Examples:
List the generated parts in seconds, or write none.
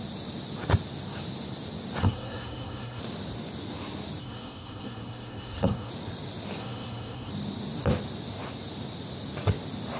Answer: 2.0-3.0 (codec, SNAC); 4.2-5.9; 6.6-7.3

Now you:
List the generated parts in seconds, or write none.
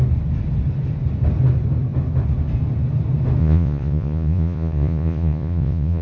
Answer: 3.4-6.0 (vocoder, Vocos)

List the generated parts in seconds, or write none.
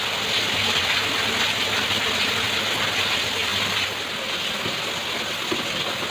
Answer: none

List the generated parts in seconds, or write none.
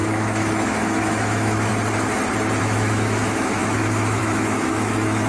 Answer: 0.0-1.7 (autoencoder, DAC-VAE); 2.6-5.3